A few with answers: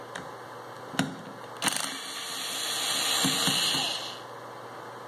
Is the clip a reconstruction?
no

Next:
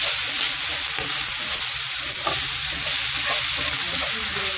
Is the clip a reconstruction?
no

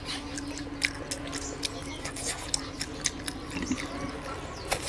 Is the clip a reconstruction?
no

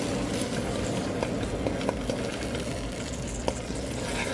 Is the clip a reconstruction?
no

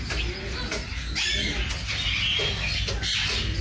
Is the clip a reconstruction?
no